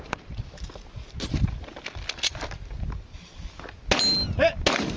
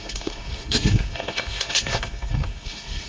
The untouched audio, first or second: first